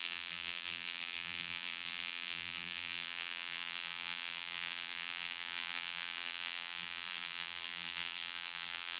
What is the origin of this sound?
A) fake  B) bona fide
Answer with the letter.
A